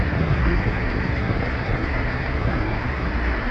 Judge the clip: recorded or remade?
remade